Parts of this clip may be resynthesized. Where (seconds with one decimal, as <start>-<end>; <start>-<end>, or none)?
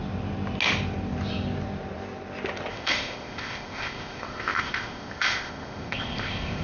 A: 2.7-6.6